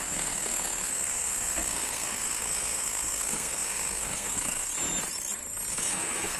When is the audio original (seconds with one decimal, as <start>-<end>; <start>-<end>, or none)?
4.7-5.7